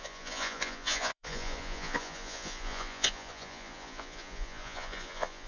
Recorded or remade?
remade